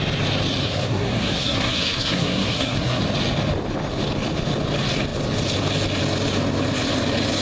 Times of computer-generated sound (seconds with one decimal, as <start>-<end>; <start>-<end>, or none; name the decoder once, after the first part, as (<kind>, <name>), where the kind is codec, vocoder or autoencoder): 0.6-3.0 (codec, SNAC)